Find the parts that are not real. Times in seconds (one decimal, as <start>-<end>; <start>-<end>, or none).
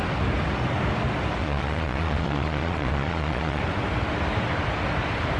1.4-3.6